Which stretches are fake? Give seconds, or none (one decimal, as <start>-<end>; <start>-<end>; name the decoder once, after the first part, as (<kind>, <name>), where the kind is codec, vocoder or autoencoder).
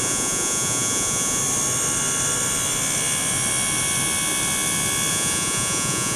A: 0.0-1.4 (vocoder, Vocos); 5.1-6.2